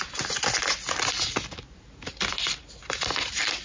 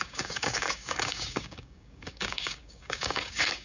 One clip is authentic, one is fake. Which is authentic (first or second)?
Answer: first